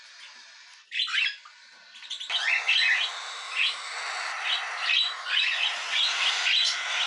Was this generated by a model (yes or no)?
no